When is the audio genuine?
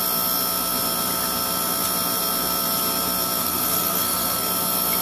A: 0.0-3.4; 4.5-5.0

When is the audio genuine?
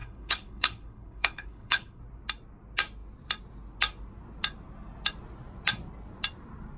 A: 2.0-6.8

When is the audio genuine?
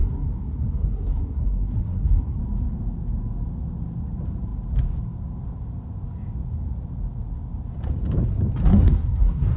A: 2.4-8.7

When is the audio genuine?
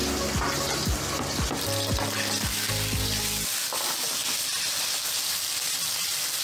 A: 0.0-6.4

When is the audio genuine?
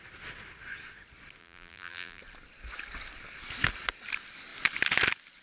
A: 0.0-1.4; 2.2-5.4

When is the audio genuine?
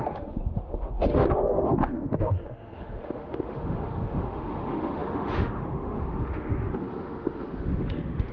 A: none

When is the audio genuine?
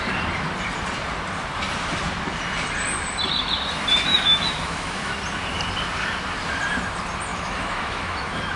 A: 0.0-4.1; 5.1-7.3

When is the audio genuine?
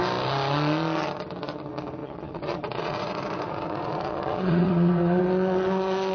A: 0.0-2.0; 5.2-6.1